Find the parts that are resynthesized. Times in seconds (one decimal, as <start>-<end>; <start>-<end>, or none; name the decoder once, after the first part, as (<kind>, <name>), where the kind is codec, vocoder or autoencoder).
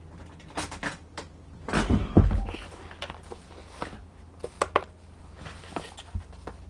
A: none